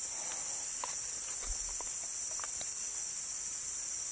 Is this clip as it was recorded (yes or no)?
yes